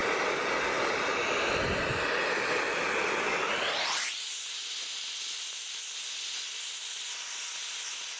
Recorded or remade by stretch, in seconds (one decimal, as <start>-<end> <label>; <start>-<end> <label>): 0.0-8.2 recorded